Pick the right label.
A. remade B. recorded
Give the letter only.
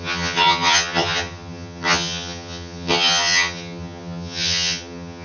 A